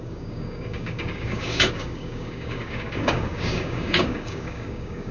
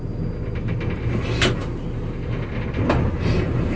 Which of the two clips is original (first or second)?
second